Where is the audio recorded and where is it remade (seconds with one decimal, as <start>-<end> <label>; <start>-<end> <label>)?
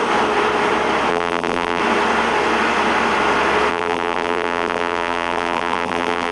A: 0.0-1.1 recorded; 1.1-1.8 remade; 1.8-3.7 recorded; 3.7-6.3 remade